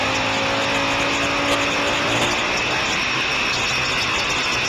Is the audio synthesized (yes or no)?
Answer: no